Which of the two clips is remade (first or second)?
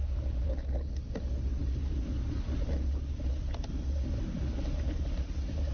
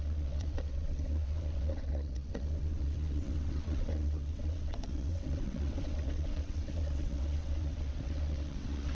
second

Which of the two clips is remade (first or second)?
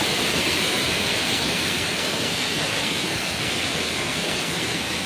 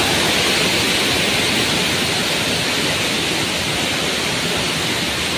first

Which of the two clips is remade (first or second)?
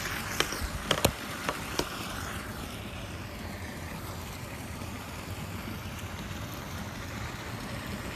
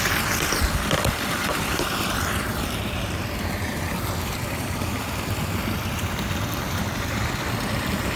second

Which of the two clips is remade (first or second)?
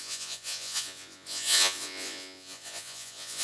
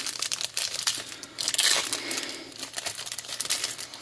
first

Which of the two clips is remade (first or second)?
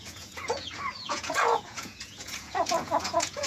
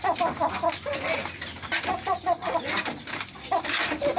first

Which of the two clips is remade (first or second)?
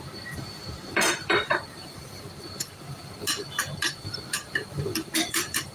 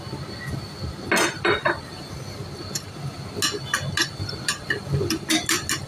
first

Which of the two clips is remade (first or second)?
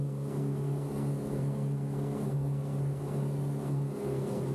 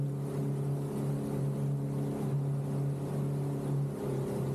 first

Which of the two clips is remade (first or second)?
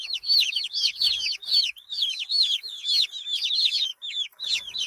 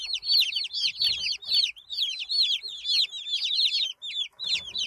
first